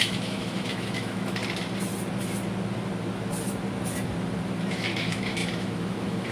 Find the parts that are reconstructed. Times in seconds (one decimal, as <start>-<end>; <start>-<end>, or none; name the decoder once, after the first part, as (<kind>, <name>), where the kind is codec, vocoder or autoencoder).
0.0-1.4 (autoencoder, DAC-VAE); 4.7-6.3